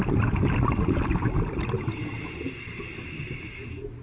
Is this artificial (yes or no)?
no